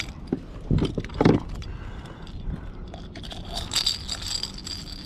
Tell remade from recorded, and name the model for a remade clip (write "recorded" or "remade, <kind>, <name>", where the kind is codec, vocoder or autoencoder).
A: recorded